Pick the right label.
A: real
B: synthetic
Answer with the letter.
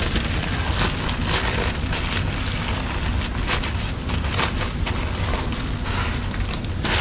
A